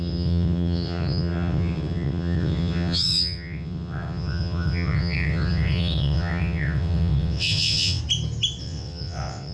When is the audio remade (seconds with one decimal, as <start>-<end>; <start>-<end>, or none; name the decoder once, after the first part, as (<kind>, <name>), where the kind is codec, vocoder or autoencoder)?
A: 0.0-8.0 (vocoder, WaveNeXt); 8.6-9.5